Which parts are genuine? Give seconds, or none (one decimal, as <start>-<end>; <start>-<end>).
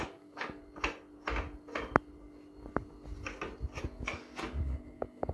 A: 0.6-3.8